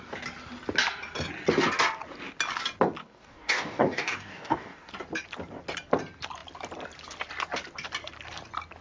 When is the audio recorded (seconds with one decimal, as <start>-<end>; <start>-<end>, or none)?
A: 0.0-3.0; 4.9-8.8